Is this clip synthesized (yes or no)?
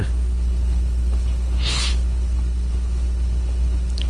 yes